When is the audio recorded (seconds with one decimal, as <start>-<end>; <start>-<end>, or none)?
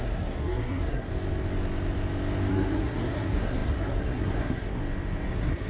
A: 1.1-2.5; 4.8-5.3